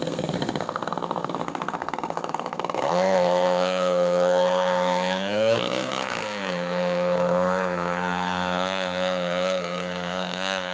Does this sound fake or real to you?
fake